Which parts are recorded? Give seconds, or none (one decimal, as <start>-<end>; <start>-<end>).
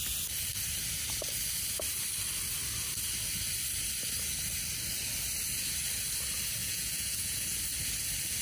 0.0-6.6; 7.6-8.4